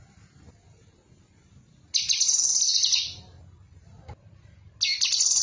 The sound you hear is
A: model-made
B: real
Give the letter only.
B